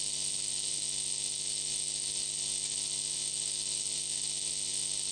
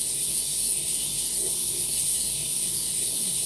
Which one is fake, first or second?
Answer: second